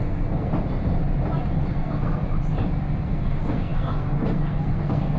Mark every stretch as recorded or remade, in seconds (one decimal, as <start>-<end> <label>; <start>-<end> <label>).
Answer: 0.0-0.5 remade; 0.5-1.7 recorded; 1.7-2.2 remade; 2.2-3.0 recorded; 3.0-5.2 remade